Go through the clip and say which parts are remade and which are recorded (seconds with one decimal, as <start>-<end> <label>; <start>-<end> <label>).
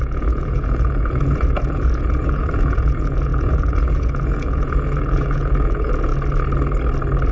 0.0-6.1 remade; 6.1-7.3 recorded